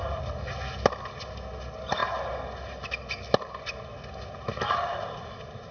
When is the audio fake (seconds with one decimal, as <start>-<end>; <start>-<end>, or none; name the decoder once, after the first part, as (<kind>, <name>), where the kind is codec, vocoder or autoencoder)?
none